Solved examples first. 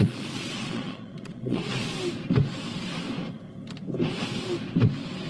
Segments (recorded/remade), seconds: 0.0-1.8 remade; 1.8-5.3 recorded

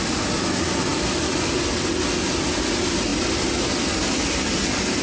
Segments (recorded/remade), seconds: 0.0-0.9 recorded; 0.9-1.6 remade; 1.6-5.0 recorded